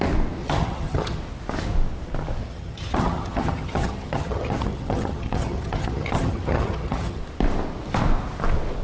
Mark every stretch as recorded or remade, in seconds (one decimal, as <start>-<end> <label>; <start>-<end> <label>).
0.0-0.4 recorded; 0.4-1.2 remade; 1.2-2.5 recorded; 2.5-7.2 remade; 7.2-8.8 recorded